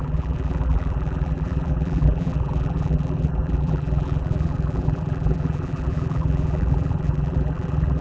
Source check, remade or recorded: remade